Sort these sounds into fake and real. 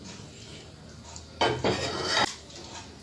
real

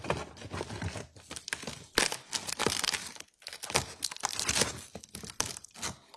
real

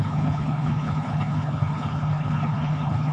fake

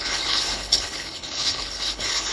fake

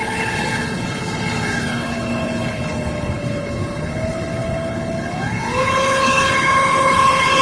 fake